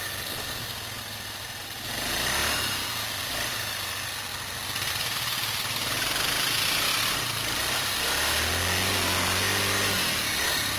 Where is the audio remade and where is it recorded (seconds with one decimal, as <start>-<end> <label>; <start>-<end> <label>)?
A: 0.0-10.8 recorded